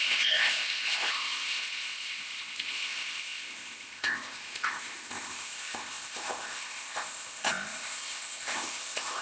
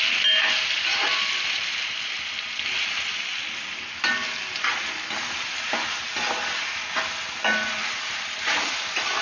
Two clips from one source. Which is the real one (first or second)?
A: second